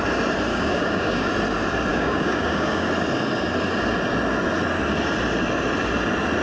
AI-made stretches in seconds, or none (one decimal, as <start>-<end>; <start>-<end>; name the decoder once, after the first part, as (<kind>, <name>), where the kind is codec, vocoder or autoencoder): 0.5-1.3 (codec, DAC); 1.9-2.9